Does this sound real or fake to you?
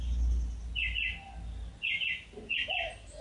real